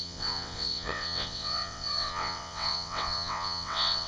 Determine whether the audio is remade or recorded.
remade